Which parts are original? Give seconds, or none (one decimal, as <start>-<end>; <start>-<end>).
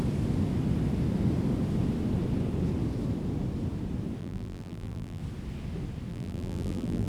0.0-4.2; 5.2-6.1